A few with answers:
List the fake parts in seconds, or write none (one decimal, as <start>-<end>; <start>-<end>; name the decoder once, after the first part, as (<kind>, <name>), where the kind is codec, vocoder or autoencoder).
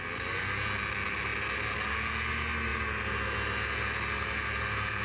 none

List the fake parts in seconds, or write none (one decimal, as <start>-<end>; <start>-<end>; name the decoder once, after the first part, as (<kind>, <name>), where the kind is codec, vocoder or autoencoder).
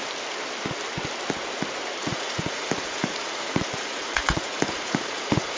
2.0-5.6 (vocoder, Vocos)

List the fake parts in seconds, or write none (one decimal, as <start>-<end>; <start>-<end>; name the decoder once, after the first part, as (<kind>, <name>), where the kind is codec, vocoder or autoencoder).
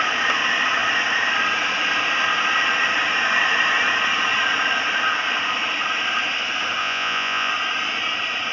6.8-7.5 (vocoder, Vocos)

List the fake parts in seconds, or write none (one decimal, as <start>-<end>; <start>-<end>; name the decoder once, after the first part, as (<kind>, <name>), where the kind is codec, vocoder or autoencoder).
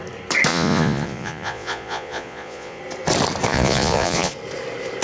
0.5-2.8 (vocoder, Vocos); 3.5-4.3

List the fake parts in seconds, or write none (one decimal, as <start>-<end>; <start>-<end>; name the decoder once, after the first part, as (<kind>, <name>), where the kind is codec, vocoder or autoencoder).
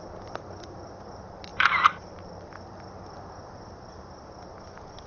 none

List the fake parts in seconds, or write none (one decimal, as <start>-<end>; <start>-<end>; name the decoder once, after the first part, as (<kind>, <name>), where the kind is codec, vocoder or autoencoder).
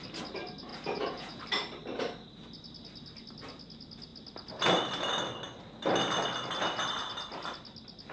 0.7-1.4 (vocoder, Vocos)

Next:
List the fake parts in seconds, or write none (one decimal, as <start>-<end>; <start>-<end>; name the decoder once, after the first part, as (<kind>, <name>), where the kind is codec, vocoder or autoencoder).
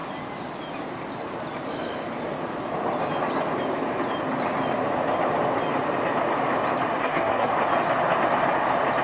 7.0-7.5 (codec, SNAC)